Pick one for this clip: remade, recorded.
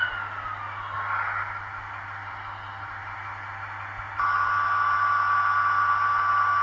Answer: recorded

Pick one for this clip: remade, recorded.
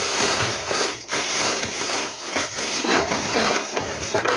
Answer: remade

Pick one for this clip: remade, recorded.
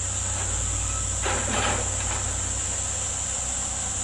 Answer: recorded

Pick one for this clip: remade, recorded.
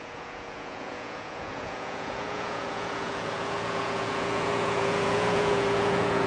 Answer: remade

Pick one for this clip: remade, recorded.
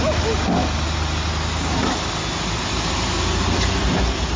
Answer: recorded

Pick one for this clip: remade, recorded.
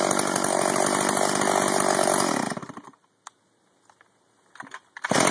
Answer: recorded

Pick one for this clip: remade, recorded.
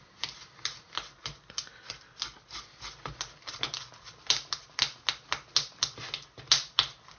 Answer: recorded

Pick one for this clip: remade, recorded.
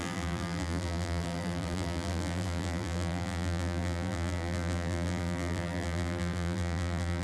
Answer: remade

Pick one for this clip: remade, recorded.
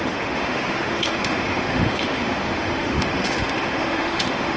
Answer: remade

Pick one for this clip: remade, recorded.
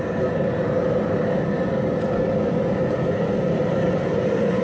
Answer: recorded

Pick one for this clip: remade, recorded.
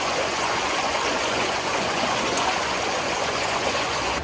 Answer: remade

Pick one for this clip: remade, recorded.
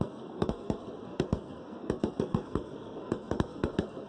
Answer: remade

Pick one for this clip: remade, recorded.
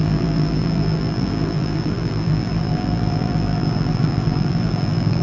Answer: remade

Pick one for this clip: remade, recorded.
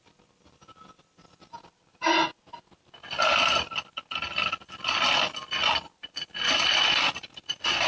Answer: recorded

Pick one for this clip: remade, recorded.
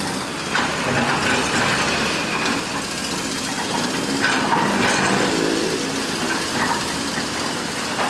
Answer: recorded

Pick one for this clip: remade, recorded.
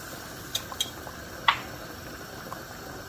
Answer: remade